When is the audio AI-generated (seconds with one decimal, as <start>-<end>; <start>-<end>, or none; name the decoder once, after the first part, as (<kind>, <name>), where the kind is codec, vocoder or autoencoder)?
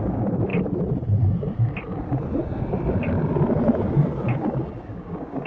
0.0-0.5 (codec, DAC); 3.8-5.5